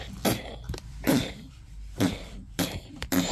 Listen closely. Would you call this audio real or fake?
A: fake